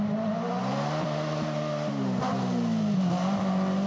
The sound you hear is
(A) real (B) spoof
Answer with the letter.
A